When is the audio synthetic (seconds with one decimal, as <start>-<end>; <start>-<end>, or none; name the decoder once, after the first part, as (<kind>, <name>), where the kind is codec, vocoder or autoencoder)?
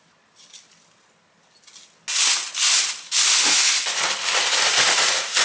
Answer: none